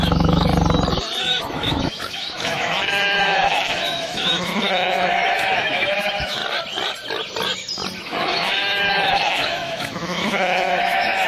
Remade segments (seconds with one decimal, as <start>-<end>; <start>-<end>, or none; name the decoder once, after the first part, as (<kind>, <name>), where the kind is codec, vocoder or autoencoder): 0.0-0.5 (autoencoder, DAC-VAE); 1.2-6.4; 8.0-11.3